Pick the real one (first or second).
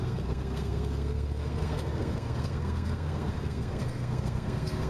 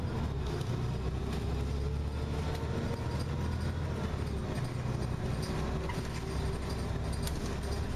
second